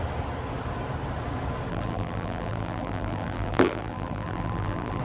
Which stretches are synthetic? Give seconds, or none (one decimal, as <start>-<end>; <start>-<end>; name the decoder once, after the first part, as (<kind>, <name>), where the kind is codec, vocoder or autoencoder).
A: 1.7-5.0 (vocoder, BigVGAN v2)